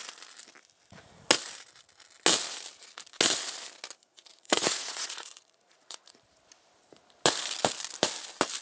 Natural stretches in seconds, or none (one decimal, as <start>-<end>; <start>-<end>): 0.0-4.1; 6.2-8.6